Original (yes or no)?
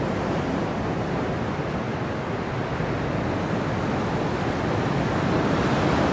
yes